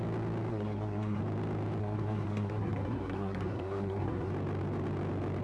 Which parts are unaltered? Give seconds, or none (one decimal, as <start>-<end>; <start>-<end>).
0.0-0.5; 1.2-1.8; 4.3-5.4